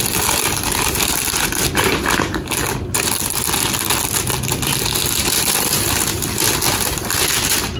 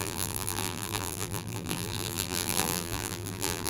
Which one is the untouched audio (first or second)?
first